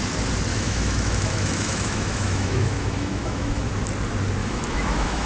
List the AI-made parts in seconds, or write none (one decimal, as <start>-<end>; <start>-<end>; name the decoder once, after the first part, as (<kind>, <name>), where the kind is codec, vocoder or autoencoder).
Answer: 0.5-3.7 (autoencoder, DAC-VAE); 4.4-5.3